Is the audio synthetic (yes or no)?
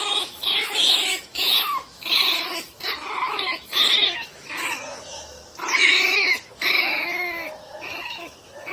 yes